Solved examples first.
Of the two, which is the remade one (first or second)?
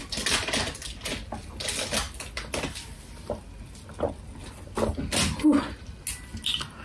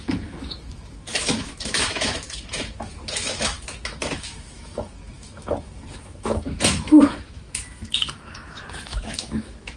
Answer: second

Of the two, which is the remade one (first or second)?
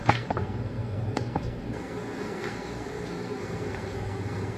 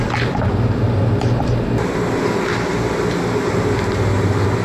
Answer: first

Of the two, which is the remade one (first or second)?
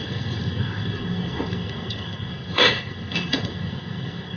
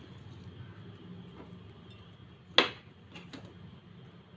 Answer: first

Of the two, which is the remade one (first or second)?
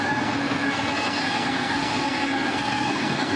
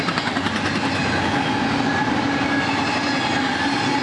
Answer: first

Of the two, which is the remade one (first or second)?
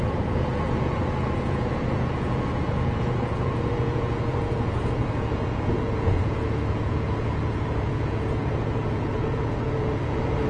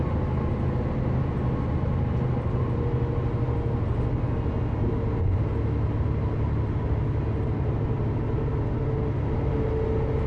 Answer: first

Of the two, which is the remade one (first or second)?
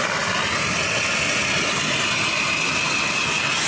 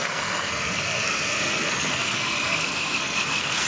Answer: second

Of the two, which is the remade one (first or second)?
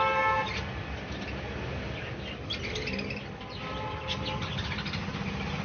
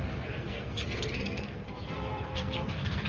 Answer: second